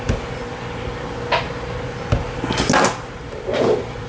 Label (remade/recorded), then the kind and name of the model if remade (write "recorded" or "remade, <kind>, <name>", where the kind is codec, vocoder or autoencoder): recorded